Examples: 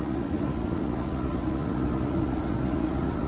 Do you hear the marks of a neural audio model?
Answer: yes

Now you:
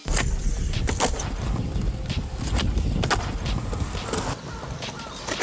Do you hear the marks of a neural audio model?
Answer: no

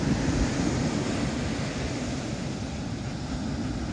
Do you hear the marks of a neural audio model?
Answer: no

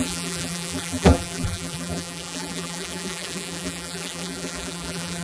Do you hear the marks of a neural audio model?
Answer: yes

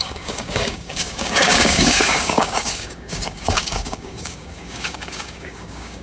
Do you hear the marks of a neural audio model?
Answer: yes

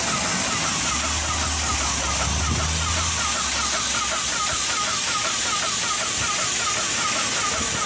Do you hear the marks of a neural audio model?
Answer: no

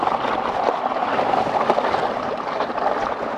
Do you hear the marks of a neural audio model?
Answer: no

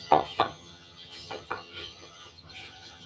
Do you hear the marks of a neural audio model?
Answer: yes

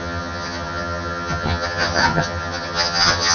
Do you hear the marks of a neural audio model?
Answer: yes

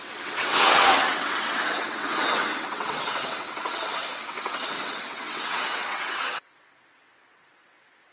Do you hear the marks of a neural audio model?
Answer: yes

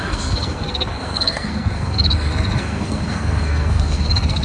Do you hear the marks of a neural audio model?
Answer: yes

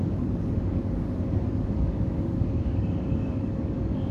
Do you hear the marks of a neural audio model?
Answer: yes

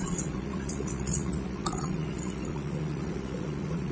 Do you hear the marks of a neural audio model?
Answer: yes